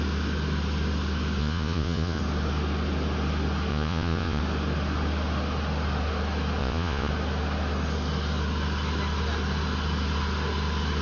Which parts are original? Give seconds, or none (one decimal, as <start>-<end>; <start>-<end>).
0.0-1.4; 2.2-3.7; 4.4-6.6; 7.1-11.0